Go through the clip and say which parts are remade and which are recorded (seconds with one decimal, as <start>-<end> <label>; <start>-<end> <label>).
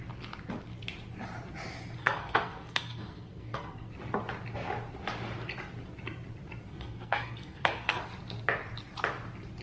0.0-2.0 recorded; 2.0-3.9 remade; 3.9-6.7 recorded; 6.7-8.0 remade; 8.0-9.6 recorded